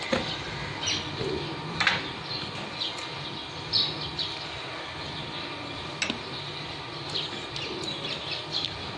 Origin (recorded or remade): recorded